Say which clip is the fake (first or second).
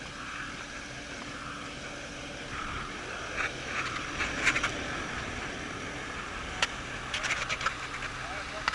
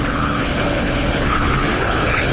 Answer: second